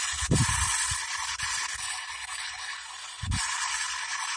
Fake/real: real